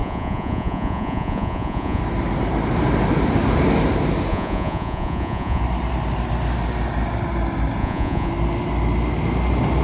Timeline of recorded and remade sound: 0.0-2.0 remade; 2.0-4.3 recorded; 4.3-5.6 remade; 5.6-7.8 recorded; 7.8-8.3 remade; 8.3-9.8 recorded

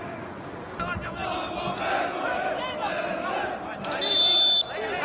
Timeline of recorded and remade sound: 0.0-5.0 recorded

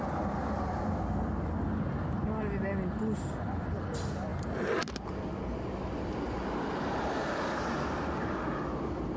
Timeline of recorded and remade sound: 0.0-9.2 recorded

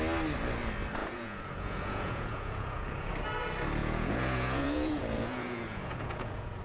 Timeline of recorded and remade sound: 0.0-1.0 recorded; 1.0-3.1 remade; 3.1-3.8 recorded; 3.8-6.6 remade

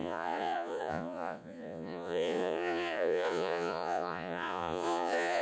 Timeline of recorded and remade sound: 0.0-5.4 remade

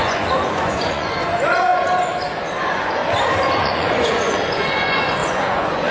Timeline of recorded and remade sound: 0.0-1.7 remade; 1.7-2.6 recorded; 2.6-3.0 remade; 3.0-3.6 recorded; 3.6-5.9 remade

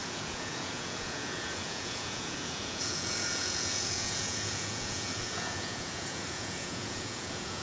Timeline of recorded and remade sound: 0.0-7.6 remade

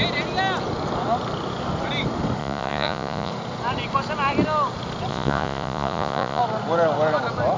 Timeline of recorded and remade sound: 0.0-2.4 recorded; 2.4-3.3 remade; 3.3-5.1 recorded; 5.1-6.4 remade; 6.4-7.6 recorded